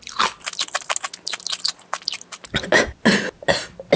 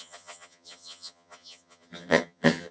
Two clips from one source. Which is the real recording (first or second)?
first